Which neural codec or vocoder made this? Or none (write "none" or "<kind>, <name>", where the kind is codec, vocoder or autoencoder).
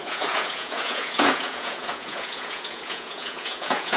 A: vocoder, Vocos